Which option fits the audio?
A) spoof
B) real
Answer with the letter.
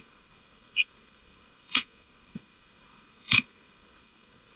A